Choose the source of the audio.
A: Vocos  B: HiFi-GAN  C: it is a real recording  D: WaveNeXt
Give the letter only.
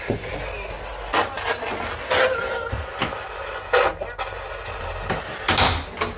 C